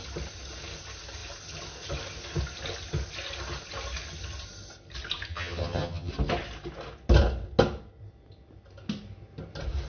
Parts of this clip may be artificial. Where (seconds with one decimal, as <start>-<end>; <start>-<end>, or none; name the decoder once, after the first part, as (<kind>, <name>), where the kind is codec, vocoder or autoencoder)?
5.3-6.1 (vocoder, HiFi-GAN)

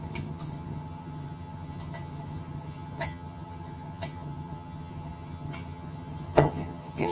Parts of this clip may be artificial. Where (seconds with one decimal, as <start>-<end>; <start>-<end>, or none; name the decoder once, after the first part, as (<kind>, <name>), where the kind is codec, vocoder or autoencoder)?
0.0-7.1 (vocoder, HiFi-GAN)

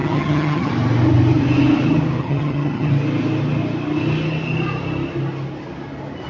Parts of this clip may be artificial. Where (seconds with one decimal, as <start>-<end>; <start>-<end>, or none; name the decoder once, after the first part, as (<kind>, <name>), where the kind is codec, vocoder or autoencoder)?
0.0-0.7 (vocoder, HiFi-GAN); 2.2-2.9

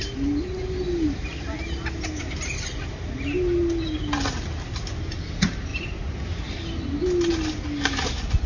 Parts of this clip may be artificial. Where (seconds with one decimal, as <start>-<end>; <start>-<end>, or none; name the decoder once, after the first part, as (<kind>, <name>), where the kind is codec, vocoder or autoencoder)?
none